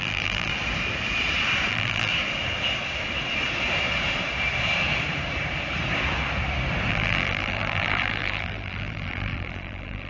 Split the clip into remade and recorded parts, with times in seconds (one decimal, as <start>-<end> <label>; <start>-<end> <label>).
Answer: 0.0-0.5 remade; 0.5-1.7 recorded; 1.7-2.1 remade; 2.1-6.9 recorded; 6.9-10.1 remade